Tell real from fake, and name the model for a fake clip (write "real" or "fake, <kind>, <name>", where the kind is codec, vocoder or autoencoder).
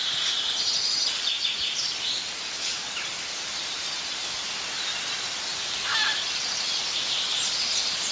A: real